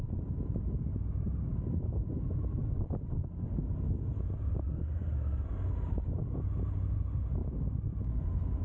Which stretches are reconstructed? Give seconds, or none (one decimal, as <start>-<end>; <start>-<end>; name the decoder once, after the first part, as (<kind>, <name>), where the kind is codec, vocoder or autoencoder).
none